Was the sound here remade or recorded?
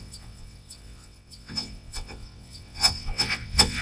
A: remade